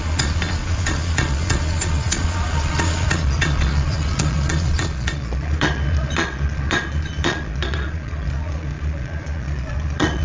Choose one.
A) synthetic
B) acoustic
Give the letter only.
A